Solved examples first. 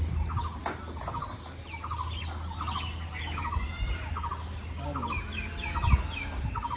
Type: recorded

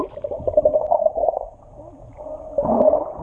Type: recorded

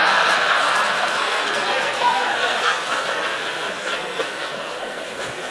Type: remade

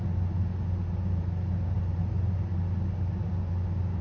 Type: recorded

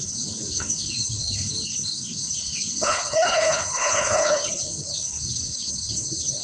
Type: remade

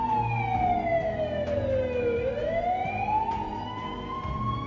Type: recorded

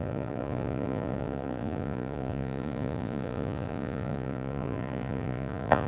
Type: remade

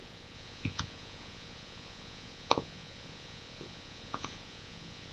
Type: remade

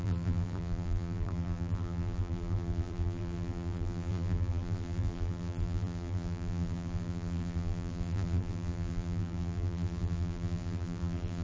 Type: remade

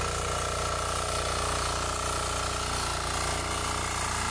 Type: recorded